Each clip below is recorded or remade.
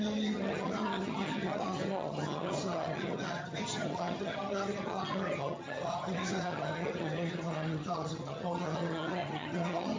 remade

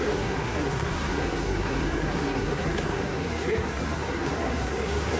remade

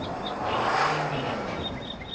recorded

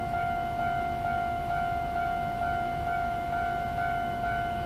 remade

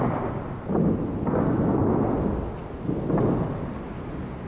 recorded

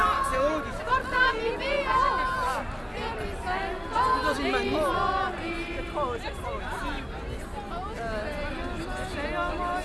recorded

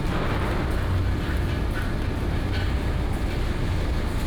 recorded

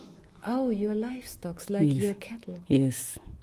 remade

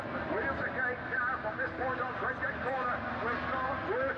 recorded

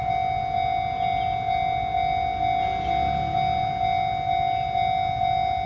recorded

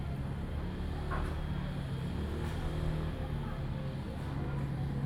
recorded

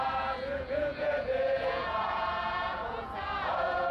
remade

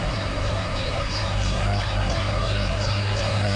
remade